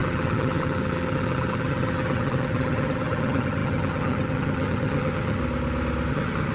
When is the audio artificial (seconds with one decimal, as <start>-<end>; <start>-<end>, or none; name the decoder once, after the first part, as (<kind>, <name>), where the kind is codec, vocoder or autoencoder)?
0.0-5.4 (vocoder, HiFi-GAN); 6.1-6.5